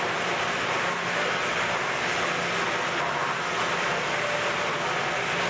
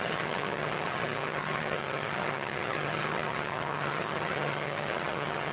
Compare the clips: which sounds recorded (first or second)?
first